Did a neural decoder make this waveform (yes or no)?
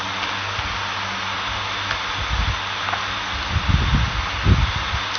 no